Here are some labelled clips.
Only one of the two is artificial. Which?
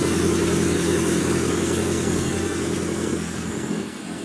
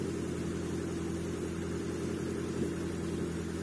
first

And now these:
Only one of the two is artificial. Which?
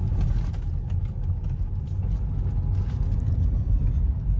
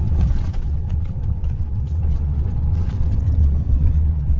second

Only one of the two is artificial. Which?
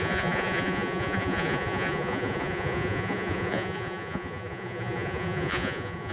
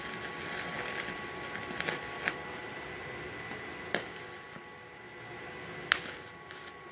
first